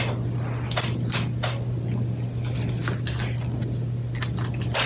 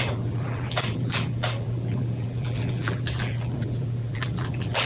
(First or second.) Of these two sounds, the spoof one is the second